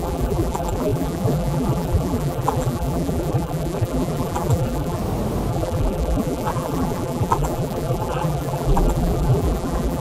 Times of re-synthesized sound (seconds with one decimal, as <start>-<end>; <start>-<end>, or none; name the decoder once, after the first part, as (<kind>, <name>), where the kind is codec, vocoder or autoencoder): 0.0-5.0 (vocoder, BigVGAN v2); 5.5-10.0